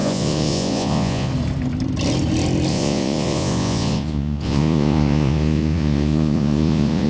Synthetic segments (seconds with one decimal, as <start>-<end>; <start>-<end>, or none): 0.0-1.3; 2.7-7.1